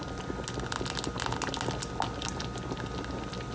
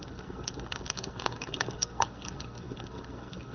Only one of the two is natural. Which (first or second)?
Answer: first